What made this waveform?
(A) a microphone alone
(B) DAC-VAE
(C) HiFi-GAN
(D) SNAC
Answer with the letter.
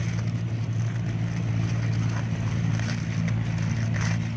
A